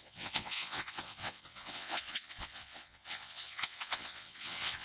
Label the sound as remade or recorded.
remade